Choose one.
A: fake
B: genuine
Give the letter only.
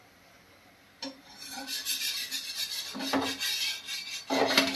B